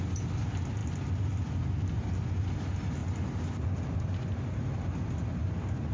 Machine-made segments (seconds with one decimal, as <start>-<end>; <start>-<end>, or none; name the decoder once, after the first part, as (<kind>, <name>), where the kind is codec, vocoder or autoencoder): none